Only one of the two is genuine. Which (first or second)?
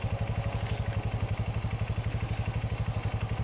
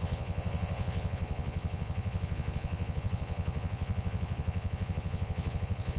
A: first